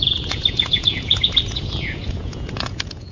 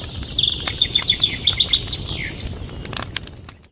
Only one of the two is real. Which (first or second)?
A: second